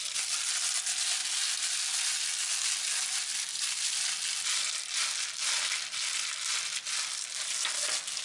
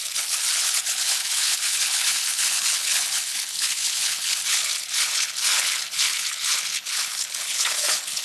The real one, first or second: first